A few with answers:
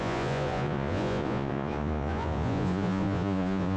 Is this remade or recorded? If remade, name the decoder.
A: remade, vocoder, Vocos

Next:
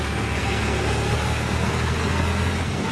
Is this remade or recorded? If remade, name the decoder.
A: remade, codec, SNAC